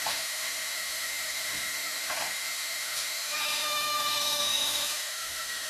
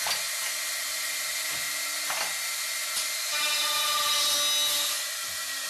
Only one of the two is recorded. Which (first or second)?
second